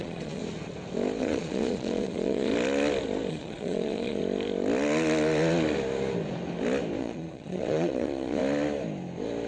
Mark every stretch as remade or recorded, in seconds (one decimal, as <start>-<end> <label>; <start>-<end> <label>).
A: 0.0-0.4 remade; 0.4-1.2 recorded; 1.2-2.5 remade; 2.5-3.3 recorded; 3.3-4.2 remade; 4.2-7.0 recorded; 7.0-8.4 remade; 8.4-9.5 recorded